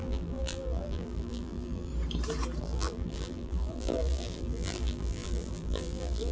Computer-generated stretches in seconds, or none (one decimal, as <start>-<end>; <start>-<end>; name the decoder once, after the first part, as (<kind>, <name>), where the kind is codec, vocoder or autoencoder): 0.0-1.9 (vocoder, BigVGAN v2); 2.6-6.3